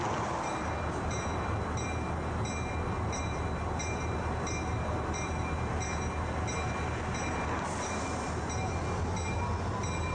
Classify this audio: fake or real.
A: real